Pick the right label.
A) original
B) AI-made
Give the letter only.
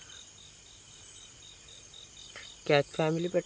A